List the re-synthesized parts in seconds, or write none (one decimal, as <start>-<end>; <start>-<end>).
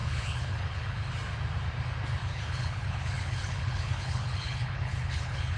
0.0-1.1; 2.2-5.6